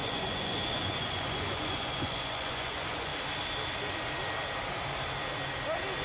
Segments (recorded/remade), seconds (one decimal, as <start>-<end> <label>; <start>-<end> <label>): 0.0-3.1 remade; 3.1-6.0 recorded